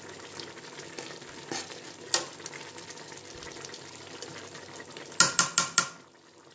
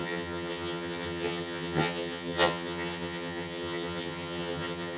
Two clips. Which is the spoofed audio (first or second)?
second